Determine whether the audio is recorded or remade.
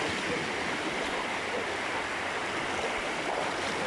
recorded